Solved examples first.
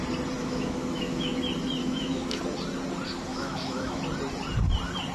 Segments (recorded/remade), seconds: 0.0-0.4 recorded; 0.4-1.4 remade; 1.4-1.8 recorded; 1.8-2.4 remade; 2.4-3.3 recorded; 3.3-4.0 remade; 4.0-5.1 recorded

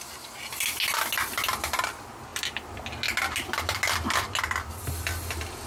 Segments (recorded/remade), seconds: 0.0-5.7 recorded

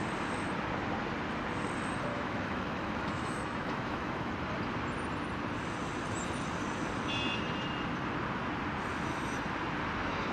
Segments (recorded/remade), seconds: 0.0-2.1 recorded; 2.1-4.3 remade; 4.3-10.3 recorded

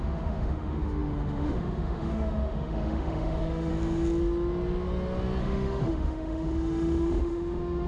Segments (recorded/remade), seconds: 0.0-3.7 remade; 3.7-5.4 recorded; 5.4-7.9 remade

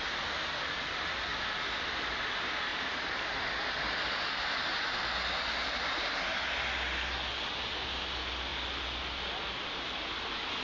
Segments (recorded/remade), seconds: 0.0-10.6 recorded

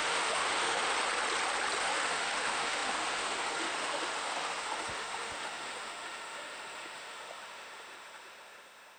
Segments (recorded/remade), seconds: 0.0-0.9 remade; 0.9-1.8 recorded; 1.8-9.0 remade